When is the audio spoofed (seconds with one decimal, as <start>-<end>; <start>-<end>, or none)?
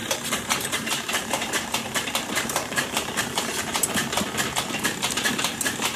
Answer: 0.0-4.0; 5.1-6.0